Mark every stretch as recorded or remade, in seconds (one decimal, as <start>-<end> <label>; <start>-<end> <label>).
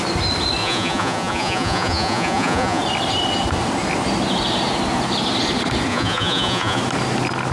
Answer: 0.0-0.6 recorded; 0.6-2.8 remade; 2.8-5.9 recorded; 5.9-6.8 remade; 6.8-7.5 recorded